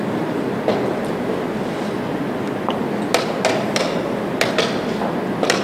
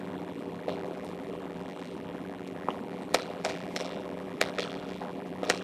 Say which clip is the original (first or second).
first